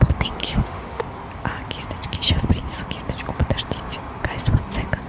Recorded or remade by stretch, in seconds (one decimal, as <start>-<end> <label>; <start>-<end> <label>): 0.0-0.4 recorded; 0.4-1.0 remade; 1.0-5.1 recorded

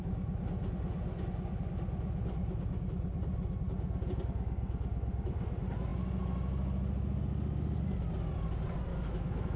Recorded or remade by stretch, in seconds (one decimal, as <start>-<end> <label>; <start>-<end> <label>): 0.0-8.9 recorded; 8.9-9.6 remade

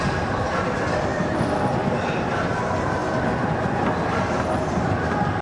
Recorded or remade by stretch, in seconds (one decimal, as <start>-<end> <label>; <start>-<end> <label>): 0.0-5.4 recorded